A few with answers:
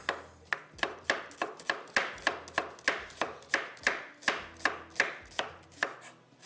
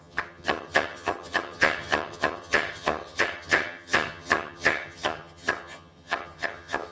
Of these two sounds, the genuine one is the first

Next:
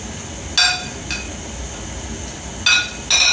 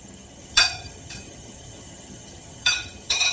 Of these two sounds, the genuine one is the first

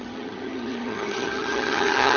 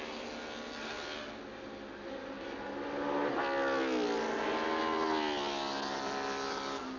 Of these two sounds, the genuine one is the second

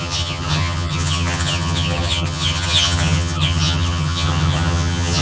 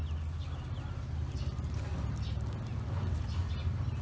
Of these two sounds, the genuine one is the second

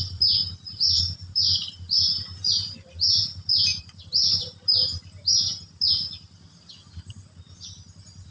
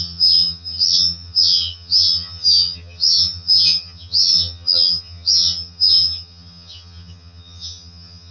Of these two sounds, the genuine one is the first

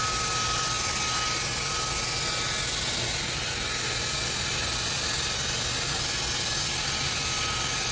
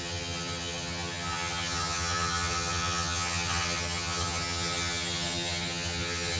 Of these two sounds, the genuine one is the first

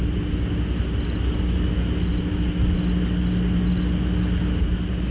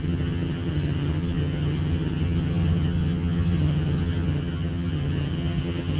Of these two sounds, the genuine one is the first